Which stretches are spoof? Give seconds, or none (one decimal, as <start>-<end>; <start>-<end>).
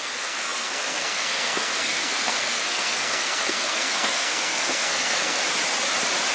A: 0.0-5.4